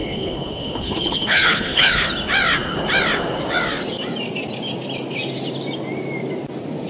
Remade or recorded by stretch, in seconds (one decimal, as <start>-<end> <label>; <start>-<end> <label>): 0.0-2.1 remade; 2.1-6.9 recorded